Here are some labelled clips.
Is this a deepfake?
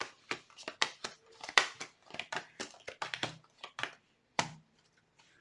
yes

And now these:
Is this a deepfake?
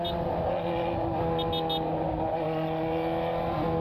no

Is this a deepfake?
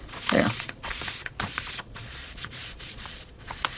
yes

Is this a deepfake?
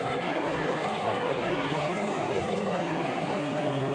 yes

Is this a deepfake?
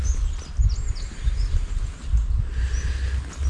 no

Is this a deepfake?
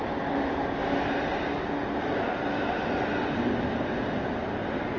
no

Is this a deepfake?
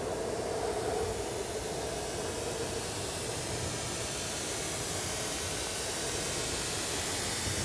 no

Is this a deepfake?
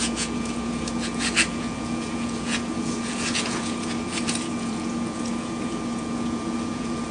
yes